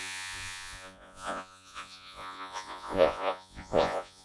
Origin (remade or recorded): remade